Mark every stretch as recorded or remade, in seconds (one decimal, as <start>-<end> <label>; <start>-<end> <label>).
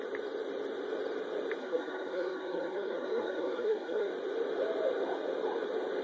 0.0-1.6 recorded; 1.6-4.1 remade; 4.1-6.0 recorded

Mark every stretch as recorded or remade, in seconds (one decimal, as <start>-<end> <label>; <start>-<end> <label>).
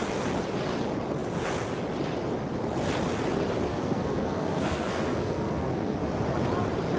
0.0-3.7 recorded; 3.7-6.1 remade; 6.1-7.0 recorded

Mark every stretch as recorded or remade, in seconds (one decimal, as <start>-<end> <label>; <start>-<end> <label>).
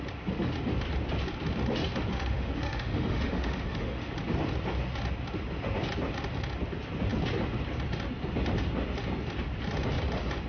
0.0-2.1 recorded; 2.1-4.1 remade; 4.1-10.5 recorded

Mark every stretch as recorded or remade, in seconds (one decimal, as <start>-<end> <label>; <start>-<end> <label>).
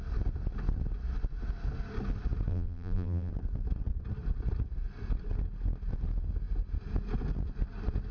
0.0-2.5 recorded; 2.5-3.3 remade; 3.3-8.1 recorded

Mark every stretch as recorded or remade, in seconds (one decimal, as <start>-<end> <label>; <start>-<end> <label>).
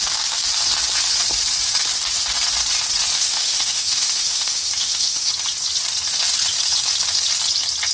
0.0-3.1 recorded; 3.1-5.3 remade; 5.3-7.9 recorded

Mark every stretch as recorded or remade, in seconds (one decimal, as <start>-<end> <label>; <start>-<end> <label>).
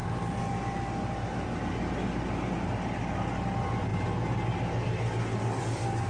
0.0-6.1 recorded